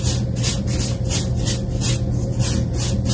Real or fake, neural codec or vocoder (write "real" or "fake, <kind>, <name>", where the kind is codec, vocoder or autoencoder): real